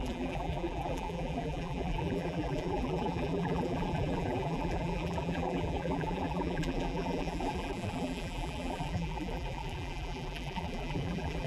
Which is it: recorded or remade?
remade